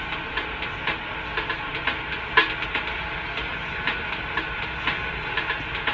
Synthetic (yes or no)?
no